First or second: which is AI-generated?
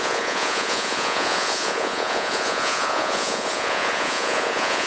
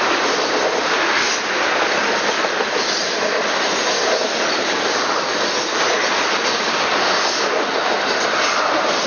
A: first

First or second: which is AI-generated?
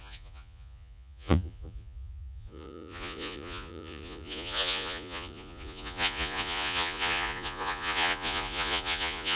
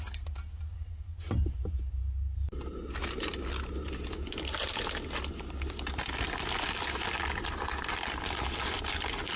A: first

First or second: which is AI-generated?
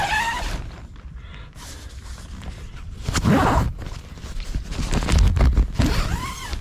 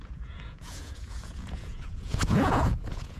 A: second